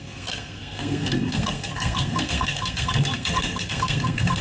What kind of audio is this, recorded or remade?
remade